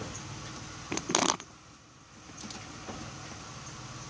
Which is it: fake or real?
real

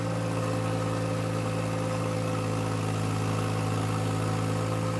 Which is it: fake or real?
real